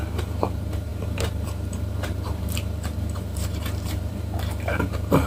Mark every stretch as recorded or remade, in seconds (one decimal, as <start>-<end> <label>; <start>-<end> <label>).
0.0-5.3 remade